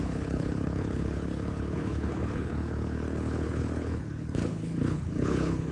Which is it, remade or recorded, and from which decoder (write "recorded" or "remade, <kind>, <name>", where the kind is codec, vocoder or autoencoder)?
remade, codec, HILCodec